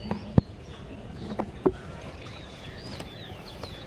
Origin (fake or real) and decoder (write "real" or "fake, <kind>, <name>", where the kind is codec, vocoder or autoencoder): fake, vocoder, Vocos